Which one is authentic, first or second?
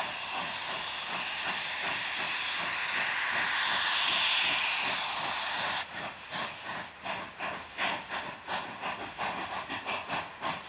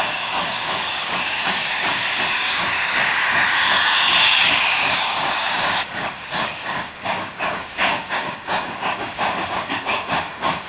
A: first